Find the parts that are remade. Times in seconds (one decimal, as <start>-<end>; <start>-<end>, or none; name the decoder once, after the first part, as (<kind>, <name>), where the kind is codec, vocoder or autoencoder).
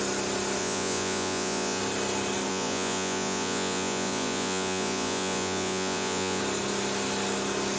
0.6-1.8 (vocoder, Vocos); 2.5-6.4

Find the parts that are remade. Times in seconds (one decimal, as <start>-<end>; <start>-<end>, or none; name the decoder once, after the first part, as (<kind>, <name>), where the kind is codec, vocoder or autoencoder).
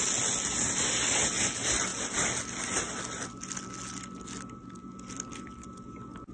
none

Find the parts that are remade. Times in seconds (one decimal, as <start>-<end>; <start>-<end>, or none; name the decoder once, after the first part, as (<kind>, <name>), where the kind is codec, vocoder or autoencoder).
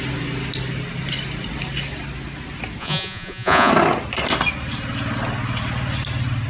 2.8-3.7 (vocoder, Vocos)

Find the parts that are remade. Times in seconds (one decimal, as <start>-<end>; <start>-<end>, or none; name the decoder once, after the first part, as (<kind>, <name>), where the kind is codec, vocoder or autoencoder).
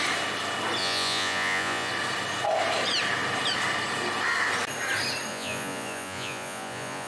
0.8-1.9 (vocoder, Vocos); 5.3-7.1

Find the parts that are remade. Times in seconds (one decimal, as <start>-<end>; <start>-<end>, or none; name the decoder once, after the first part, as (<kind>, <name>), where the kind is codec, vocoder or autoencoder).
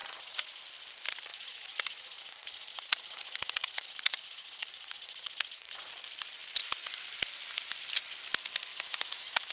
0.0-0.6 (vocoder, Vocos); 1.3-5.9; 8.7-9.5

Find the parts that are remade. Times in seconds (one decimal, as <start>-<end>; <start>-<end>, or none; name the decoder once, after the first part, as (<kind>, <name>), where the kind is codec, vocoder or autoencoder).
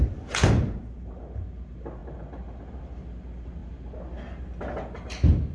none